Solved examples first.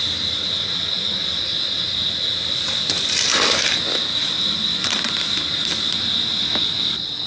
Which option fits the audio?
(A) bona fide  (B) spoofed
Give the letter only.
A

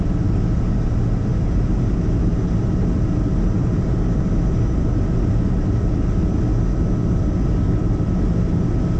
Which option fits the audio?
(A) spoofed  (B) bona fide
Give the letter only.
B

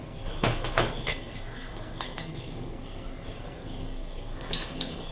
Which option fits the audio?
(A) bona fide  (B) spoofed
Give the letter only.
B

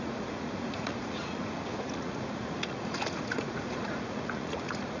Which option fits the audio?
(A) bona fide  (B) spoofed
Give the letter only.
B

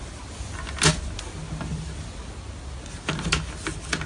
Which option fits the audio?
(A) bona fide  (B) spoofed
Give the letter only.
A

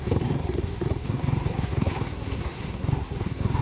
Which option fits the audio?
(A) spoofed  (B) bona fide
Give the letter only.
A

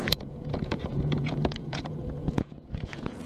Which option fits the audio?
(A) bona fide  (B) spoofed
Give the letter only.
B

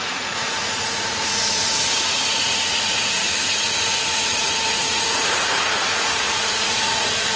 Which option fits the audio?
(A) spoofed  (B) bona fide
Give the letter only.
A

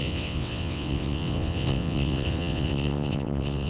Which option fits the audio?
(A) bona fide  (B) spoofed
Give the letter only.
B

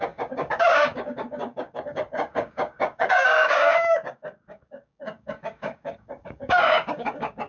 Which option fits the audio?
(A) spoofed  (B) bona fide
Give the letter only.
A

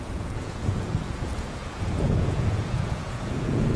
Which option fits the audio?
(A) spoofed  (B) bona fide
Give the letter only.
A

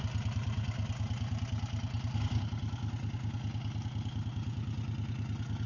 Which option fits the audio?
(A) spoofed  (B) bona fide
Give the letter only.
B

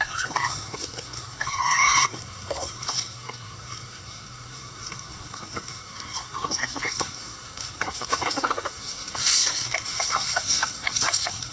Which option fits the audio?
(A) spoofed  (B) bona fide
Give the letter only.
A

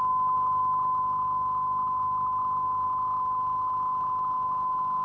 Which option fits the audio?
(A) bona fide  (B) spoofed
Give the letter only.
A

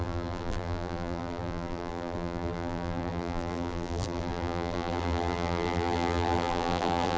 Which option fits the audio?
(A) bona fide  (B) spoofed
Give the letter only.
B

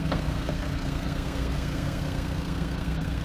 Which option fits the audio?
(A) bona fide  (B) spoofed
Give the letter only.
B